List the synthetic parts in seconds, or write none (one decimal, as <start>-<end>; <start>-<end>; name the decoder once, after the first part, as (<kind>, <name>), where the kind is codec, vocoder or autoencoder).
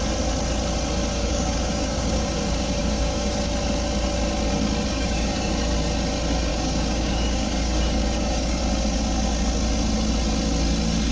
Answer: 1.1-2.4 (codec, DAC); 2.8-3.3; 4.9-5.5; 6.5-8.6